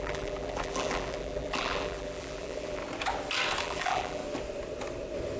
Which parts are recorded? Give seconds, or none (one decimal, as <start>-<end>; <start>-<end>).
2.8-3.6; 4.2-5.4